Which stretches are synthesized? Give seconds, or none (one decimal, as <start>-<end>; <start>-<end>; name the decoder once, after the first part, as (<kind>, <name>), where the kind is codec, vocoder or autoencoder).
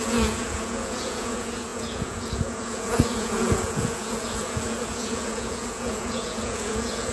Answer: 0.0-7.1 (vocoder, Vocos)